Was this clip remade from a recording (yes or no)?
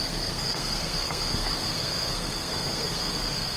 yes